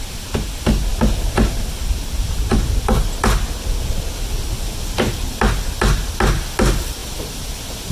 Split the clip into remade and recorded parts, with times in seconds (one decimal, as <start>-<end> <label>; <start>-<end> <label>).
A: 0.0-7.9 recorded